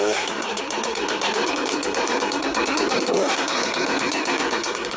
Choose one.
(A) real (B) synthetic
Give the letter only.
B